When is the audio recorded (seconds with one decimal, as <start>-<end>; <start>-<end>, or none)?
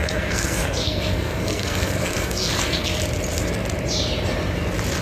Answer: 3.0-5.0